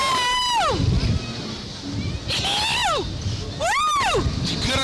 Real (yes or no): yes